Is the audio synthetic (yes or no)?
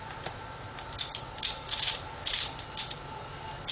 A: no